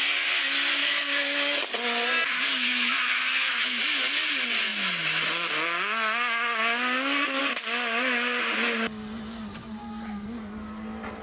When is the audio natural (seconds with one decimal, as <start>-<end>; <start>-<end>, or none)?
0.0-0.8; 1.6-2.5; 3.8-11.2